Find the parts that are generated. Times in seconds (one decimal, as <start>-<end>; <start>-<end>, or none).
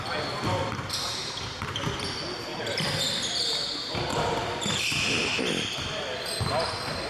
2.5-3.3; 4.1-5.4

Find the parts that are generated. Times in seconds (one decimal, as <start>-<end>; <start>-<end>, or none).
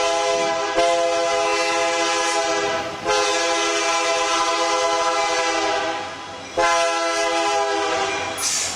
none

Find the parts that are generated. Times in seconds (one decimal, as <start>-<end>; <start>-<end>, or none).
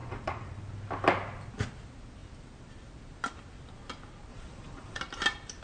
0.0-0.6; 4.3-5.0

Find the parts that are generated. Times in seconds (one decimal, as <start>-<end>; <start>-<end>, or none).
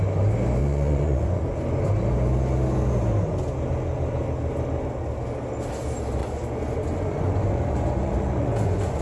0.6-1.4; 6.2-9.0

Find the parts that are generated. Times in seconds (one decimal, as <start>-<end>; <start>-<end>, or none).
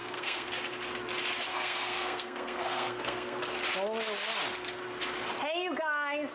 0.0-0.5; 1.5-3.4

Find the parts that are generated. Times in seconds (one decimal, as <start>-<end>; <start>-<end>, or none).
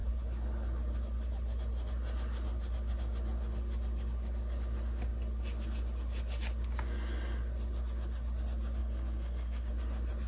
8.8-9.7